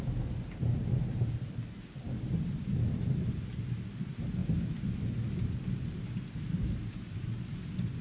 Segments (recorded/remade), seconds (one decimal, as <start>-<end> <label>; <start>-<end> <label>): 0.0-8.0 recorded